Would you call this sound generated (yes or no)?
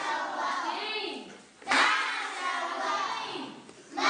no